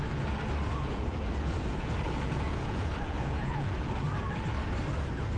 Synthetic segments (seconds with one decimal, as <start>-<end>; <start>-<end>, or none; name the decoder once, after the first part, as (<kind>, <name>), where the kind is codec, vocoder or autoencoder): 0.8-4.0 (vocoder, Vocos)